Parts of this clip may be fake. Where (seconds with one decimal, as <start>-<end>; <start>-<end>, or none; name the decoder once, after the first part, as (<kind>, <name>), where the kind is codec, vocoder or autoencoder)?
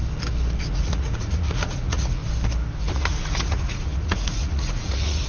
0.7-2.2 (vocoder, Vocos); 2.8-5.3